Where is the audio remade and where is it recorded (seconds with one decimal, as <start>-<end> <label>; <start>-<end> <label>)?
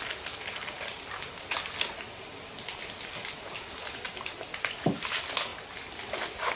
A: 0.0-6.6 recorded